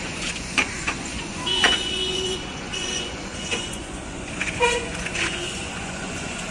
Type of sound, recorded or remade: remade